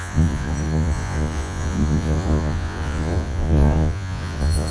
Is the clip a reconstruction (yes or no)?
yes